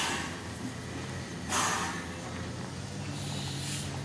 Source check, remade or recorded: recorded